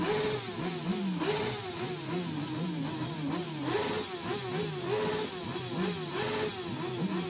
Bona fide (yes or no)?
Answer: yes